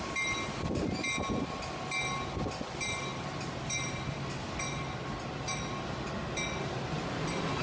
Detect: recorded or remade recorded